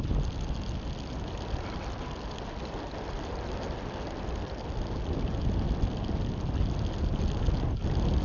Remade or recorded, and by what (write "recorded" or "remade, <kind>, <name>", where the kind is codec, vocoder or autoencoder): recorded